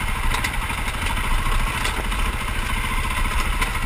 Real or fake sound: real